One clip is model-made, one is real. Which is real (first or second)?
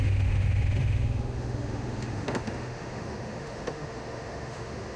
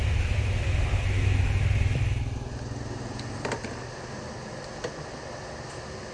second